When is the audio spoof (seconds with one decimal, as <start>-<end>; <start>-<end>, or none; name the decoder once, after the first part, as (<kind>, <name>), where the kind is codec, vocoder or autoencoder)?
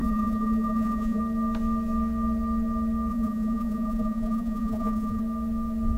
0.0-1.2 (vocoder, Vocos); 3.1-5.2